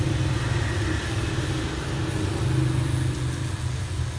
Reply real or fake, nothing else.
real